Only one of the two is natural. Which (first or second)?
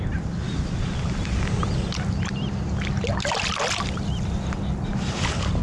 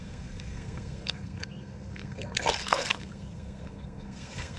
first